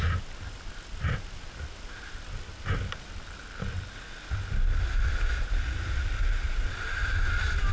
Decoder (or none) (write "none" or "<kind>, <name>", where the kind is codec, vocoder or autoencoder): none